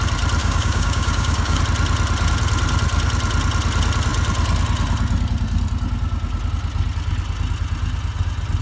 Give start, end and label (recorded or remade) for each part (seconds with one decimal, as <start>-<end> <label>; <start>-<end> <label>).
0.0-0.4 recorded; 0.4-1.6 remade; 1.6-8.6 recorded